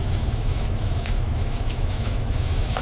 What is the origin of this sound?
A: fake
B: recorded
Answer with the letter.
A